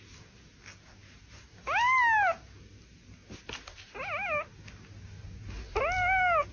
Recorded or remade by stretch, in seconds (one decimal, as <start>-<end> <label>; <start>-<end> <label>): 0.0-6.5 recorded